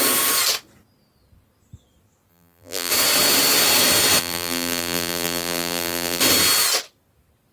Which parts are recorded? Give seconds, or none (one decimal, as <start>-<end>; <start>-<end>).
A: 0.0-2.3; 2.9-4.2; 6.2-7.5